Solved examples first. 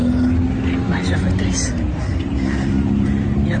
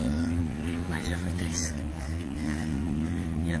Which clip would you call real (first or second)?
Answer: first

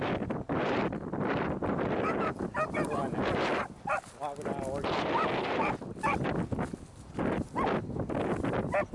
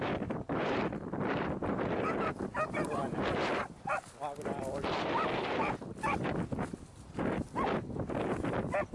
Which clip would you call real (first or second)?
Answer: first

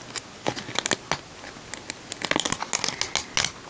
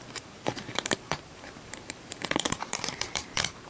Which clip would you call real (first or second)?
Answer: first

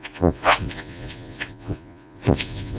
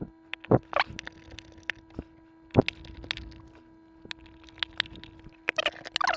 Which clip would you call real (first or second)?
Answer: second